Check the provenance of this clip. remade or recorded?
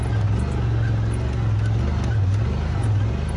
recorded